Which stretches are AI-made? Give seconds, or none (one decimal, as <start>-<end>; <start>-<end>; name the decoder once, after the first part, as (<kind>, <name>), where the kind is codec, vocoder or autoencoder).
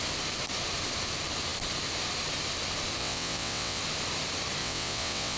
3.0-3.8 (vocoder, WaveNeXt); 4.6-5.4